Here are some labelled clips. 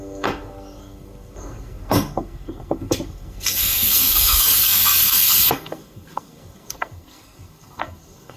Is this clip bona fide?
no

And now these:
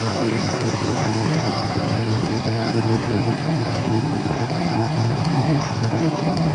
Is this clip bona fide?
no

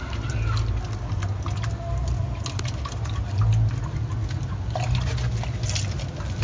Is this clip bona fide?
yes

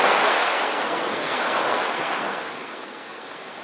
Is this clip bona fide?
no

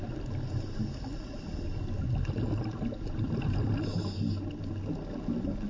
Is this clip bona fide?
yes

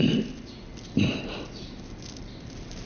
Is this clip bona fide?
yes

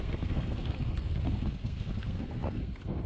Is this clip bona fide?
no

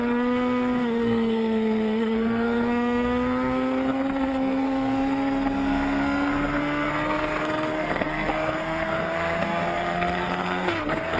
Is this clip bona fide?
no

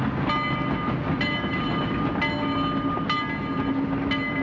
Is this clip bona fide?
yes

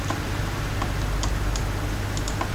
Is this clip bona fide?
yes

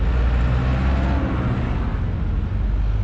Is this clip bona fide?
yes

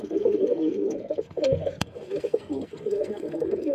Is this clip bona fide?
no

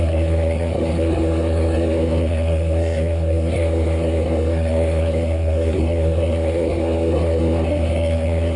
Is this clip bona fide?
no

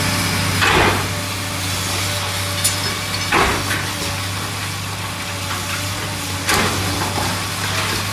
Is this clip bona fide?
yes